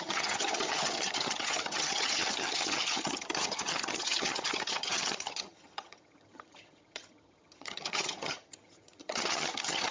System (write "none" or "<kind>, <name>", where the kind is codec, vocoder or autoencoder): vocoder, HiFi-GAN